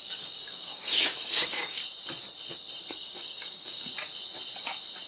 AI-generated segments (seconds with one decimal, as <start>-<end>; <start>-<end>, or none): 0.0-1.8; 2.9-3.9